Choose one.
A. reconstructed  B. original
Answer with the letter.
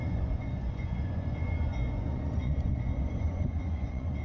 A